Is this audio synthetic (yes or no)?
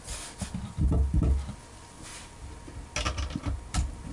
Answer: no